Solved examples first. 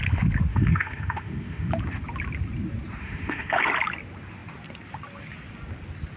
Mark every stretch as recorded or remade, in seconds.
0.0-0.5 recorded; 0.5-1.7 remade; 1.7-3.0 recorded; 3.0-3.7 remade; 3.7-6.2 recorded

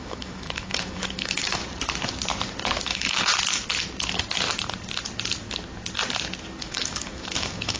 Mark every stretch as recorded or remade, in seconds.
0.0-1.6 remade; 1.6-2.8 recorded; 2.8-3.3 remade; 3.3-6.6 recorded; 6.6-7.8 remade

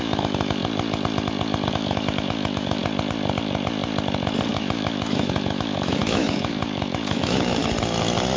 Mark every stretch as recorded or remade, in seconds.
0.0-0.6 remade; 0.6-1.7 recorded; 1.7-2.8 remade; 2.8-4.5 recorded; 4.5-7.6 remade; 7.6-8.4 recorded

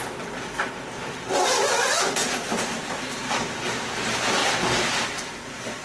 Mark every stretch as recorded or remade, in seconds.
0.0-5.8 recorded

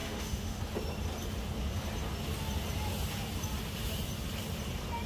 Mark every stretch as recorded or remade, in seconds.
0.0-0.6 remade; 0.6-5.1 recorded

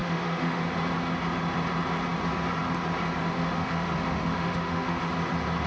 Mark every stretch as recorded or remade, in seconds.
0.0-0.6 remade; 0.6-3.2 recorded; 3.2-5.1 remade; 5.1-5.7 recorded